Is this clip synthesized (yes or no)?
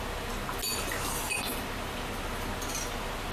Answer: no